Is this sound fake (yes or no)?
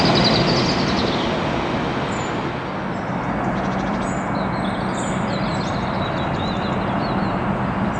no